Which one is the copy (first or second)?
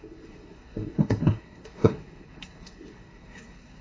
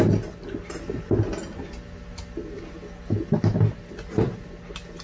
first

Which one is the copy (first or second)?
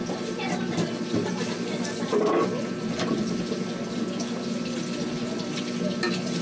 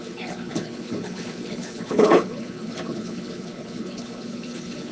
second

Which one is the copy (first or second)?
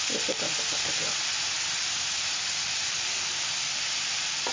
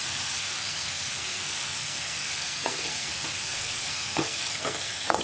second